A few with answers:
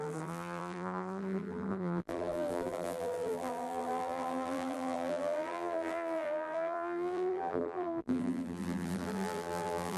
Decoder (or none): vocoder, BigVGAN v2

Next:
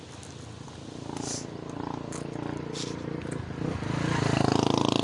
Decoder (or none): none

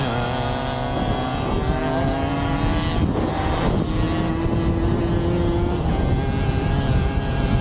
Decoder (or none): none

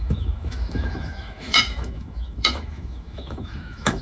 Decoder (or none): autoencoder, DAC-VAE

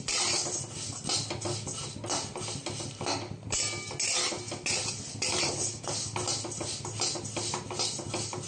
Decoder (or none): none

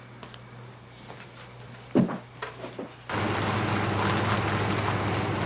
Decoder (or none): none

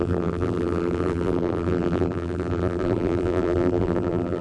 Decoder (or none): vocoder, BigVGAN v2